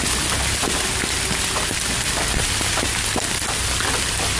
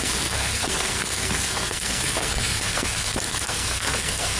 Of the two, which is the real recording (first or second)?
first